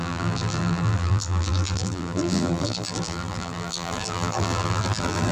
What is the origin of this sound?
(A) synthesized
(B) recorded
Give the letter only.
A